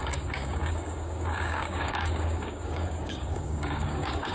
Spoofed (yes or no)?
yes